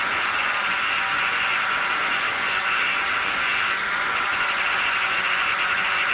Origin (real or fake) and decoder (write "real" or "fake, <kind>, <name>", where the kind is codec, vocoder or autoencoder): fake, vocoder, Vocos